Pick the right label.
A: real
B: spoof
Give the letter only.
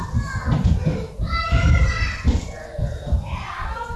A